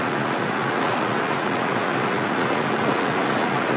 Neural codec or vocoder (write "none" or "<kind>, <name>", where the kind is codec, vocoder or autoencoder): vocoder, Vocos